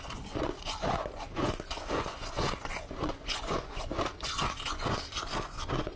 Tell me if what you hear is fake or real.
fake